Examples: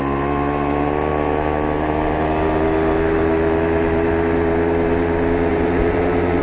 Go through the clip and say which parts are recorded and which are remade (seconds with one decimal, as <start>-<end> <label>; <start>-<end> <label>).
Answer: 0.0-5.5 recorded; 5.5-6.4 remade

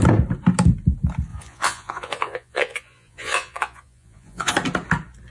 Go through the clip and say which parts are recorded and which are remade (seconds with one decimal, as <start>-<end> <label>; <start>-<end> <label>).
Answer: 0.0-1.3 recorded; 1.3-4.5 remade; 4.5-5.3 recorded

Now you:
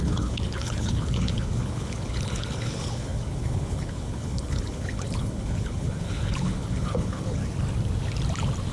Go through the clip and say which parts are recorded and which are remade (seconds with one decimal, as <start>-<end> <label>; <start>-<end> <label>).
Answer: 0.0-7.4 remade; 7.4-8.7 recorded

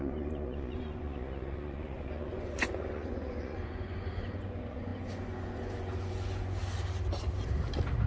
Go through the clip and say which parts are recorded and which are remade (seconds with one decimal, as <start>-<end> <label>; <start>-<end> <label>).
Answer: 0.0-6.6 remade; 6.6-8.1 recorded